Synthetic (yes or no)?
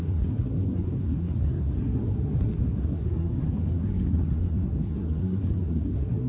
yes